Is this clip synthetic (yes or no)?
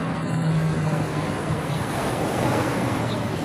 yes